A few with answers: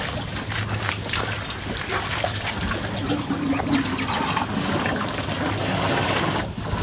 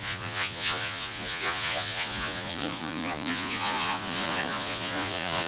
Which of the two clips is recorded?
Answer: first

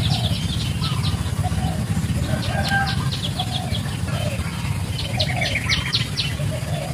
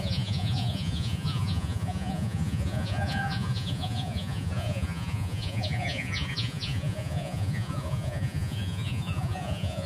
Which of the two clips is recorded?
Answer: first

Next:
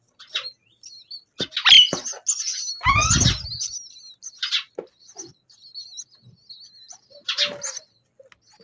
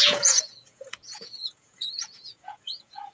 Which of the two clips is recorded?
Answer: first